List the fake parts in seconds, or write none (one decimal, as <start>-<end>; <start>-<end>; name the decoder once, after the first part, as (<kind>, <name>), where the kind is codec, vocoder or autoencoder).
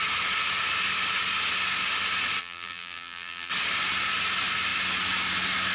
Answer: 2.4-3.5 (vocoder, BigVGAN v2)